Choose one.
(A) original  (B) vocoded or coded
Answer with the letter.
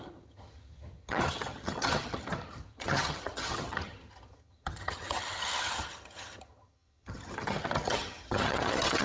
B